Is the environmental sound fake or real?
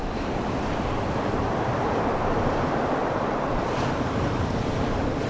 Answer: fake